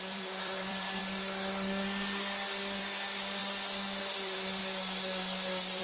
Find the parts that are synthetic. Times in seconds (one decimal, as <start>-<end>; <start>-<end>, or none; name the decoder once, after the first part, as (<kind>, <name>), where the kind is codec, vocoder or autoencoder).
0.0-1.0 (vocoder, BigVGAN v2); 2.8-3.4; 4.0-4.6